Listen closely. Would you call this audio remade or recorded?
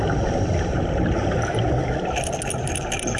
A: recorded